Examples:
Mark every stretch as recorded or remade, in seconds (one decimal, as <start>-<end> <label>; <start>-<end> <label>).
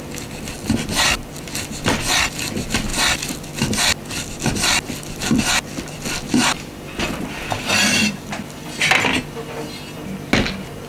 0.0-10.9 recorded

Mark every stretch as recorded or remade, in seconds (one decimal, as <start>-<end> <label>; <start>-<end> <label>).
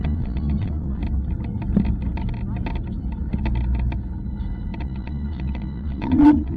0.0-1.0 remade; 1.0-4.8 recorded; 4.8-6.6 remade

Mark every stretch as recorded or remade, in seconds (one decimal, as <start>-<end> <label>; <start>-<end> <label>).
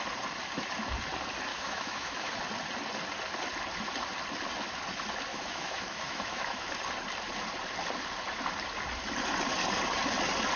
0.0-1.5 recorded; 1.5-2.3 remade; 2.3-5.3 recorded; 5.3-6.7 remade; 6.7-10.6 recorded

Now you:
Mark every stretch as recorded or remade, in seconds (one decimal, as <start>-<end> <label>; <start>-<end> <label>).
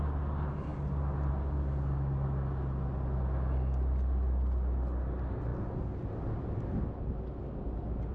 0.0-8.1 recorded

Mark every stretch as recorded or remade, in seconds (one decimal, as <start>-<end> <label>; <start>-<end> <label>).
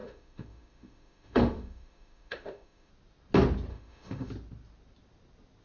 0.0-2.9 remade; 2.9-3.7 recorded; 3.7-4.3 remade; 4.3-5.6 recorded